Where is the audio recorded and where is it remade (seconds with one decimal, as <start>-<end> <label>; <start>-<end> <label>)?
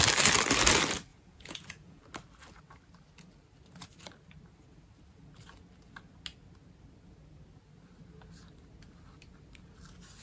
0.0-1.1 recorded; 1.1-2.0 remade; 2.0-10.2 recorded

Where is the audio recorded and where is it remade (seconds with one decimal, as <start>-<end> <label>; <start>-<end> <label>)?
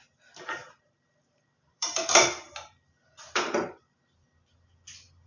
0.0-0.6 recorded; 0.6-3.8 remade; 3.8-5.3 recorded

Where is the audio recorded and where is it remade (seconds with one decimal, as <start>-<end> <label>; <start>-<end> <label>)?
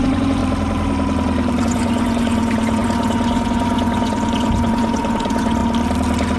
0.0-0.4 remade; 0.4-1.6 recorded; 1.6-5.6 remade; 5.6-6.4 recorded